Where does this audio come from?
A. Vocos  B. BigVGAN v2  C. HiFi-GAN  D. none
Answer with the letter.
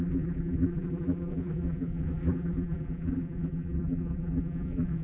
B